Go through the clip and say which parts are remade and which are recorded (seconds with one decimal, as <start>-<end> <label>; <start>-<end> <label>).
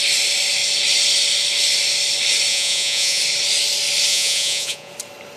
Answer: 0.0-2.5 recorded; 2.5-3.2 remade; 3.2-4.1 recorded; 4.1-4.9 remade; 4.9-5.4 recorded